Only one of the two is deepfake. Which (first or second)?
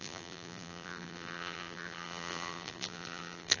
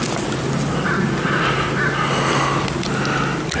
first